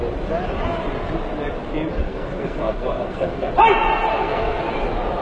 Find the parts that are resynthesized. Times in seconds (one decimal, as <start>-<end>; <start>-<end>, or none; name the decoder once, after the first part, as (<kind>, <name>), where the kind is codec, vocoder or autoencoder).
2.0-3.5 (codec, SNAC); 4.1-4.6